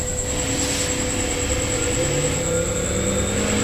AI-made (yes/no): no